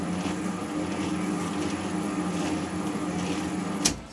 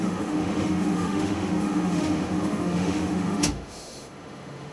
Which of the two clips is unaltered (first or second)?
first